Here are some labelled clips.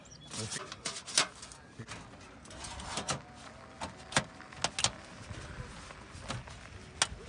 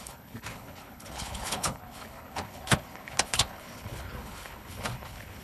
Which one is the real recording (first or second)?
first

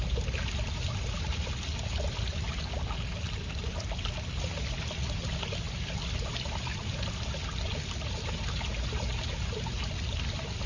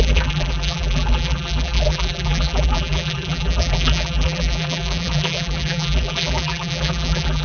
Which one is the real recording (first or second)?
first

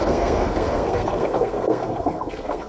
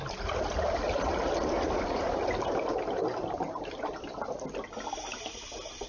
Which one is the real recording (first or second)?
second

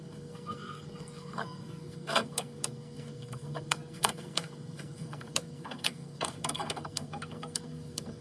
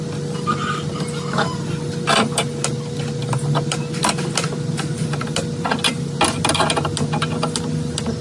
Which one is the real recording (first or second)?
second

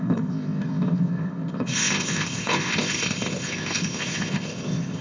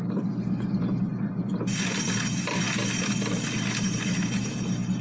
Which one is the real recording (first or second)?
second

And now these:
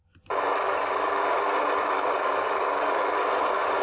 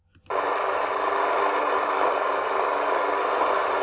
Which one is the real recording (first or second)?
second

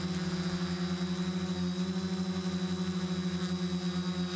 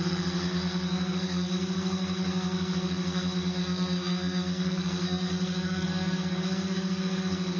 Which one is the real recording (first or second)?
first